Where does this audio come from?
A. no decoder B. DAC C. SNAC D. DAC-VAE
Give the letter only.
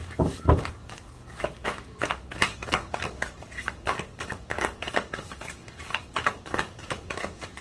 B